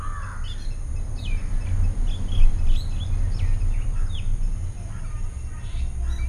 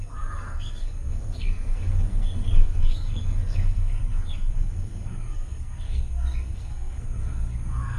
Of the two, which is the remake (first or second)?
second